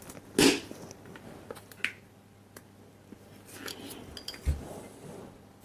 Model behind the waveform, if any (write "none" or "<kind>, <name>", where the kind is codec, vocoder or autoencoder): none